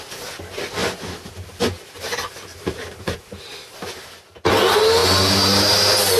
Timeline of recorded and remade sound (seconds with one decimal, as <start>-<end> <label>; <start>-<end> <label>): 0.0-0.8 recorded; 0.8-4.5 remade; 4.5-6.2 recorded